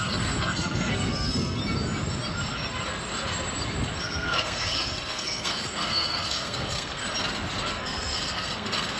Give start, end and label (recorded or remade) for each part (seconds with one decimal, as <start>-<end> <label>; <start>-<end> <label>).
0.0-1.6 remade; 1.6-4.0 recorded; 4.0-7.0 remade; 7.0-7.7 recorded; 7.7-9.0 remade